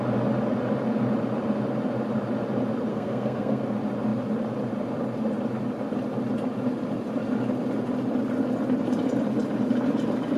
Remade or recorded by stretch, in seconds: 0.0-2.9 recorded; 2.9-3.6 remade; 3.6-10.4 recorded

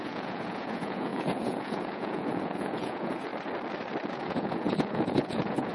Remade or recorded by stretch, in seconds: 0.0-3.3 remade; 3.3-4.1 recorded; 4.1-5.7 remade

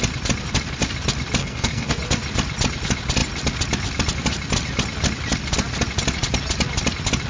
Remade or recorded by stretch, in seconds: 0.0-1.4 recorded; 1.4-2.0 remade; 2.0-7.3 recorded